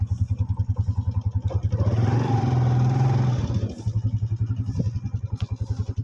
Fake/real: real